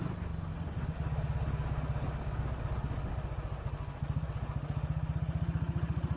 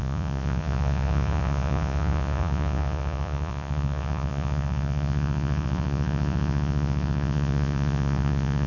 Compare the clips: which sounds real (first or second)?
first